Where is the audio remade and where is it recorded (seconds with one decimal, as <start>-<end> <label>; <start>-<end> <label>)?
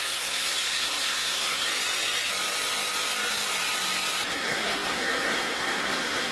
0.0-1.7 remade; 1.7-4.3 recorded; 4.3-6.3 remade